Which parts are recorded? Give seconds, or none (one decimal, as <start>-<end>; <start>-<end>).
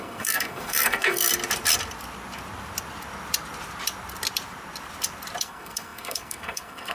1.3-5.4